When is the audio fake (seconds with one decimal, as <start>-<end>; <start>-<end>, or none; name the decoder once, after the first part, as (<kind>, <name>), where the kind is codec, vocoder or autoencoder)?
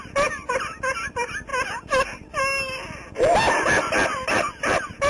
none